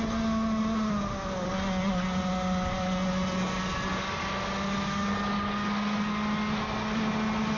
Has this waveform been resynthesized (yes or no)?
no